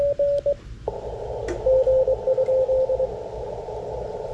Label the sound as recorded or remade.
recorded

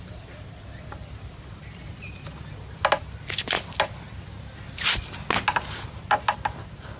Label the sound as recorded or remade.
recorded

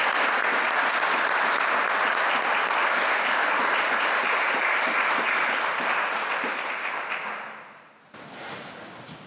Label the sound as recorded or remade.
recorded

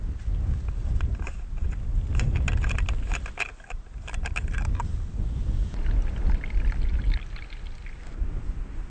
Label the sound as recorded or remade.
recorded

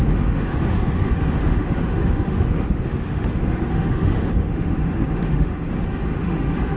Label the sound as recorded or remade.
remade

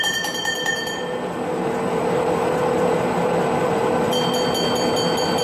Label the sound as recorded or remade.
recorded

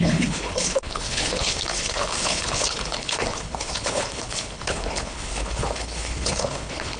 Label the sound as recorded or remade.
remade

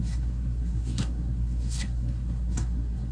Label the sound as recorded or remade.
remade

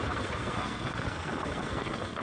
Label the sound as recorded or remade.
remade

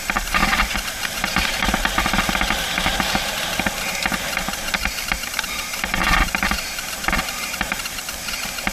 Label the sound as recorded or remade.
remade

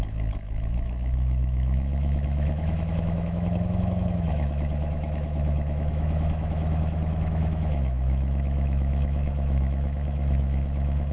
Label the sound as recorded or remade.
remade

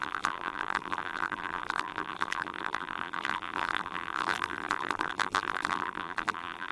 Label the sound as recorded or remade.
remade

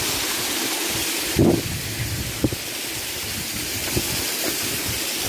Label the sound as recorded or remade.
recorded